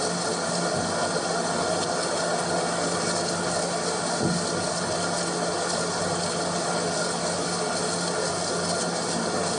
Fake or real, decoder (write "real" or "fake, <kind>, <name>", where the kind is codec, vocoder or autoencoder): real